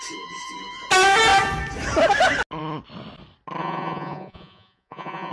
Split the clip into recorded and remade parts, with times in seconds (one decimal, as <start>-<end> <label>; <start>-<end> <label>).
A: 0.0-3.6 recorded; 3.6-5.3 remade